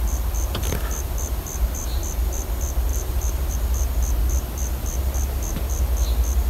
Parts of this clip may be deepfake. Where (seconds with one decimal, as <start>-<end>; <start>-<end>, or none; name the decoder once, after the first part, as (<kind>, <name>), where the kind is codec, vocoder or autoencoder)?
2.9-3.5 (vocoder, BigVGAN v2)